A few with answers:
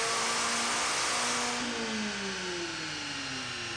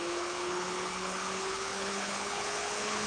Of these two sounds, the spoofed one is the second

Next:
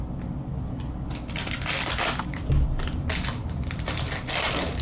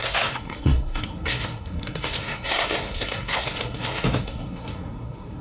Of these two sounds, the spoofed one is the second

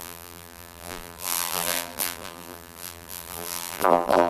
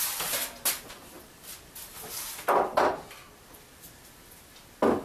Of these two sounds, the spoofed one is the first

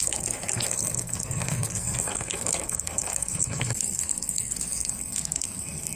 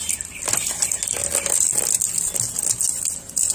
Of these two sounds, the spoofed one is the first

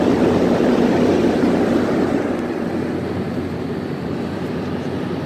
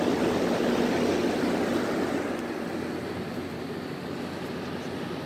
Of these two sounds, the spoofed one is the first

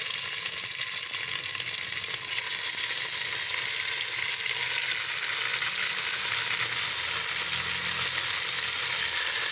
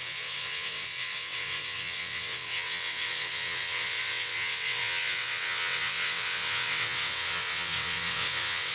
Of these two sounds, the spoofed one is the second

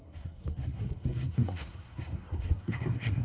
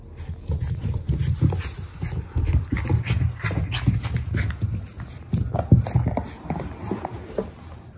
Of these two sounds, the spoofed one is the first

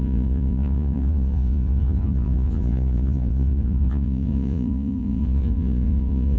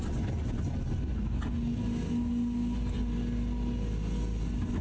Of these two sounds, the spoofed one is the first